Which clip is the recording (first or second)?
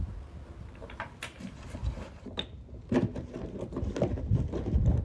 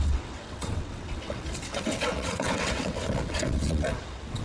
first